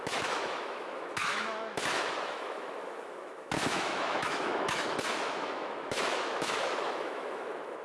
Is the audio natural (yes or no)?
no